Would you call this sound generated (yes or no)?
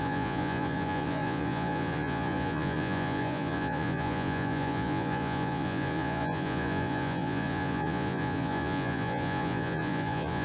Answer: yes